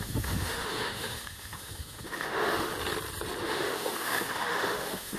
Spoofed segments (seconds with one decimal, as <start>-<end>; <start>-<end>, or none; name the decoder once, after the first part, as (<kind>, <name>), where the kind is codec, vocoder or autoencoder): 0.0-2.7 (autoencoder, DAC-VAE); 3.4-5.2